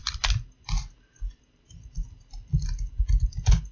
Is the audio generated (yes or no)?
no